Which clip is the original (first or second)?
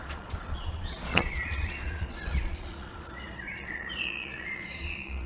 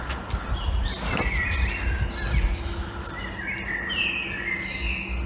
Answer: second